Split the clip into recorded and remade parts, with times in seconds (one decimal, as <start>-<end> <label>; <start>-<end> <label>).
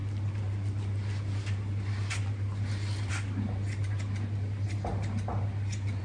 0.0-6.0 recorded